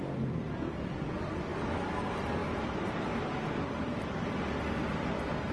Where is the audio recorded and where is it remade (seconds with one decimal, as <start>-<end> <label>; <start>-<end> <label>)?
0.0-2.4 recorded; 2.4-4.0 remade; 4.0-5.5 recorded